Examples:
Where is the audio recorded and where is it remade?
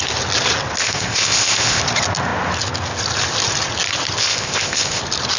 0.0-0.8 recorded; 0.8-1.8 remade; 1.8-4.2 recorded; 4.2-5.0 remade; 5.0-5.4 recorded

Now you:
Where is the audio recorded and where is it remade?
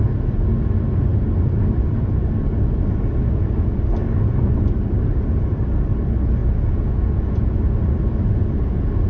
0.0-6.4 recorded; 6.4-7.6 remade; 7.6-9.1 recorded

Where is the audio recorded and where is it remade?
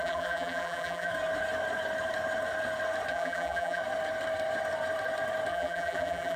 0.0-1.1 remade; 1.1-3.1 recorded; 3.1-3.8 remade; 3.8-5.5 recorded; 5.5-6.4 remade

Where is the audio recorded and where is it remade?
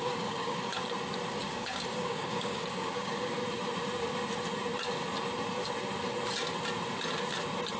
0.0-0.7 remade; 0.7-1.3 recorded; 1.3-3.4 remade; 3.4-7.8 recorded